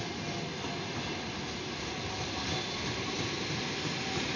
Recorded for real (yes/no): yes